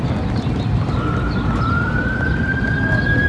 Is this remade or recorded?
recorded